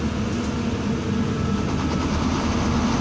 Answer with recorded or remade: recorded